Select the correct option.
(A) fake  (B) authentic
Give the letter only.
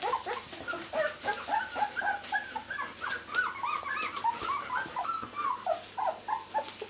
B